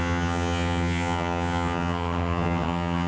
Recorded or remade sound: remade